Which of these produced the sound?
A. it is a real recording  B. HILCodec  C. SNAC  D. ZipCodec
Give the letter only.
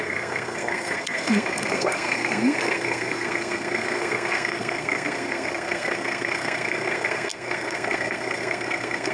C